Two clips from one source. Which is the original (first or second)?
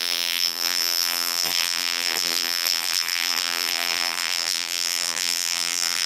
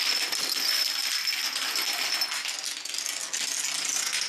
second